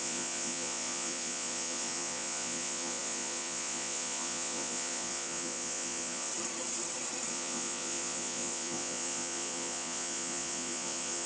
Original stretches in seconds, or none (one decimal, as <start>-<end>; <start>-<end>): 6.3-7.3

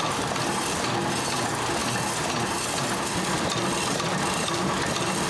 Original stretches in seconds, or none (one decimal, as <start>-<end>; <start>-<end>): 0.0-5.3

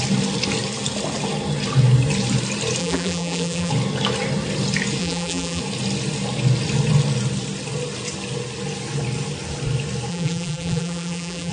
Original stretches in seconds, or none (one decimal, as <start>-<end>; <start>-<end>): 0.0-2.8; 3.7-5.0; 5.6-10.1

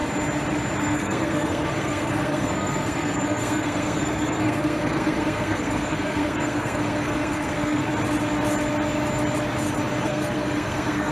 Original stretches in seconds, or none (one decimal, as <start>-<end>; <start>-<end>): 0.0-0.8; 7.9-10.0

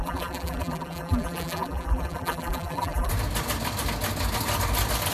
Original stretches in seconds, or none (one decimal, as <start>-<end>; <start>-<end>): 3.1-5.1